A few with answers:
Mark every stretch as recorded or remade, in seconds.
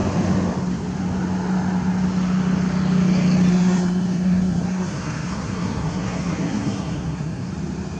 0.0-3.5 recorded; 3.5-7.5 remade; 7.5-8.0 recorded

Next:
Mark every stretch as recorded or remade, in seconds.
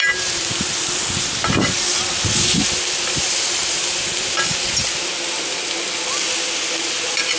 0.0-7.4 recorded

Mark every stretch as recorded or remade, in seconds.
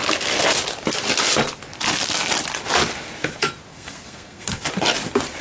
0.0-3.7 recorded; 3.7-4.7 remade; 4.7-5.4 recorded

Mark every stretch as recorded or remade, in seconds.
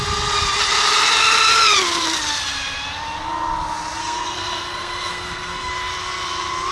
0.0-4.0 recorded; 4.0-5.7 remade; 5.7-6.7 recorded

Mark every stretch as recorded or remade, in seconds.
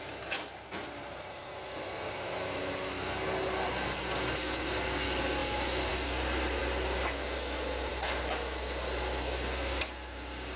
0.0-10.6 recorded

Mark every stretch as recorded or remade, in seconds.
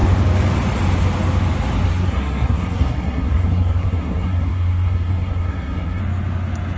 0.0-1.9 recorded; 1.9-6.0 remade; 6.0-6.8 recorded